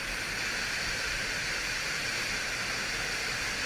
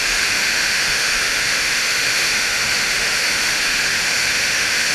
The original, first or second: first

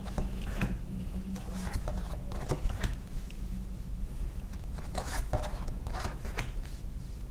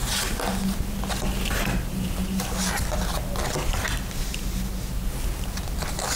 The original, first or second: second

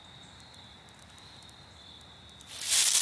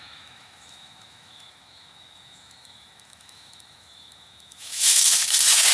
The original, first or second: first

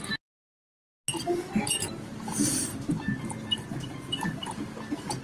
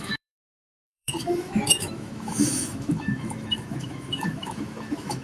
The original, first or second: first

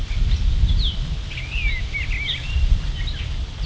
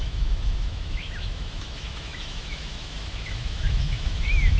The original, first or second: first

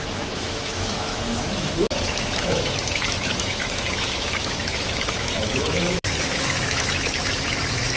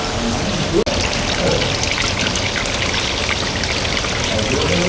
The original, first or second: second